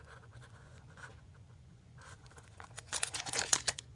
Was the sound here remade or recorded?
remade